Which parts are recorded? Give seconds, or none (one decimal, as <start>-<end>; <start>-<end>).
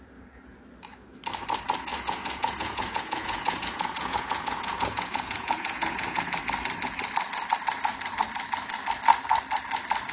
0.0-1.9; 6.4-10.1